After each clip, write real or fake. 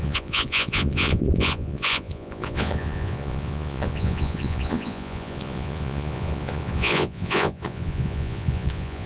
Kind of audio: fake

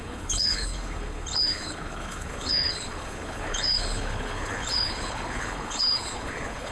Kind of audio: fake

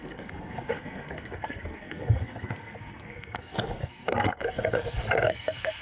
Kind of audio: fake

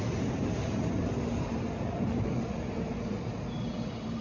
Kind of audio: fake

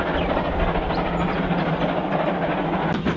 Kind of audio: real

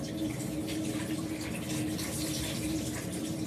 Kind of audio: real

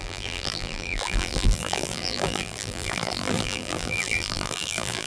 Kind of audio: fake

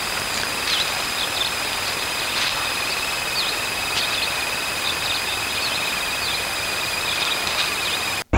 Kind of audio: real